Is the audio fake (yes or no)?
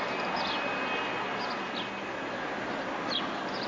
no